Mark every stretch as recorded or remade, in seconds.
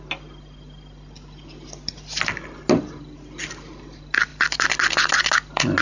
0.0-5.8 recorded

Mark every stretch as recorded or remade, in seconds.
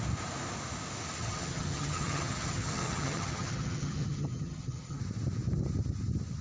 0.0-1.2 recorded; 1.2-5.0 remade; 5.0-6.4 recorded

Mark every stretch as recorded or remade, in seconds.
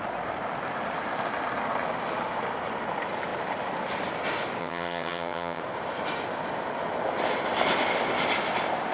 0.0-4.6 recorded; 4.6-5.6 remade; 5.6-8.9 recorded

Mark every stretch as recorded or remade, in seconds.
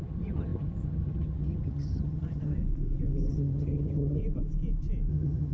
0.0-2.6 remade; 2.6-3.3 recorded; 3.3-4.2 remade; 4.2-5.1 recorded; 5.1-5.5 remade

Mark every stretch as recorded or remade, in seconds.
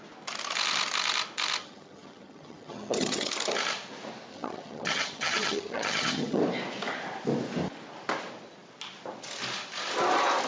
0.0-1.6 recorded; 1.6-3.3 remade; 3.3-4.3 recorded; 4.3-6.4 remade; 6.4-10.5 recorded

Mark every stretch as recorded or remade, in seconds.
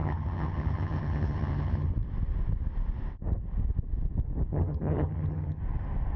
0.0-1.9 remade; 1.9-4.5 recorded; 4.5-5.6 remade; 5.6-6.2 recorded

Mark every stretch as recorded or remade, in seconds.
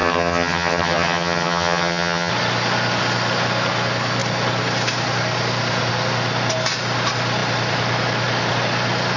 0.0-2.3 remade; 2.3-9.2 recorded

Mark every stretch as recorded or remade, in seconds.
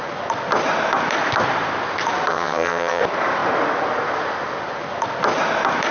0.0-2.3 recorded; 2.3-3.0 remade; 3.0-5.9 recorded